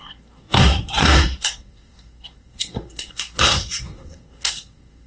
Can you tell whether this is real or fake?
fake